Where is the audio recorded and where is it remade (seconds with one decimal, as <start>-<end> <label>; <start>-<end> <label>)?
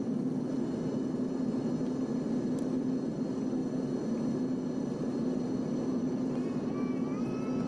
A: 0.0-3.6 remade; 3.6-4.6 recorded; 4.6-7.7 remade